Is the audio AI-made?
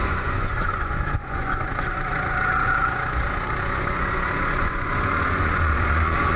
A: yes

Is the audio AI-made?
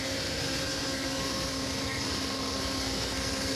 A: yes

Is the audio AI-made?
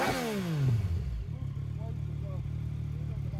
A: no